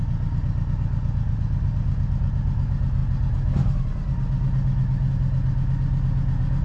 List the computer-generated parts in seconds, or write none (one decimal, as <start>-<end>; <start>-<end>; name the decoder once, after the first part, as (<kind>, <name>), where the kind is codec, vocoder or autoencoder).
none